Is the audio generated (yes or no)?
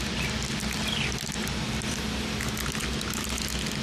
no